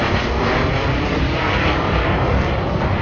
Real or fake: real